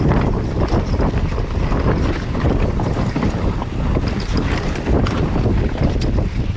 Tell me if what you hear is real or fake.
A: fake